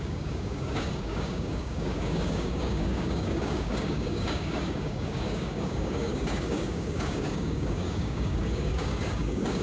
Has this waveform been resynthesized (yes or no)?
yes